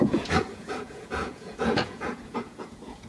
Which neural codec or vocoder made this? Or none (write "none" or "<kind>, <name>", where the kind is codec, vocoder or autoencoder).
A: vocoder, Vocos